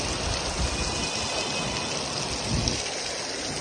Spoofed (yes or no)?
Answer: no